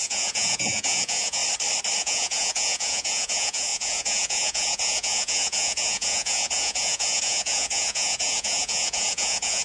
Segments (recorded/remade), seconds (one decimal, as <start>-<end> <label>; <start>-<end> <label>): 0.0-1.4 remade; 1.4-2.0 recorded; 2.0-9.6 remade